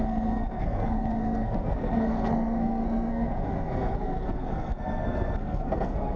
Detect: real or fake fake